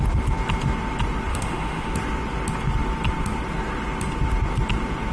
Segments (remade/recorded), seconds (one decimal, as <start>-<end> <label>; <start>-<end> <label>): 0.0-1.3 recorded; 1.3-1.9 remade; 1.9-5.1 recorded